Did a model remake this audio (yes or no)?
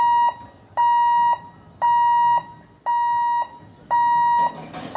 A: no